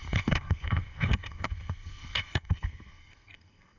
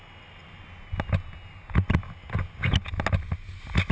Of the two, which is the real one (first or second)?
second